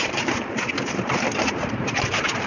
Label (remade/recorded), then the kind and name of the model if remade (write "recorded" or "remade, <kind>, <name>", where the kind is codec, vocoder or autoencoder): remade, vocoder, BigVGAN v2